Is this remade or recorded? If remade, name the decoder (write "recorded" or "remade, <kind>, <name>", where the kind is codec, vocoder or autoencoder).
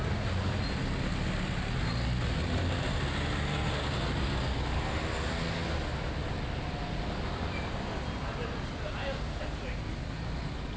recorded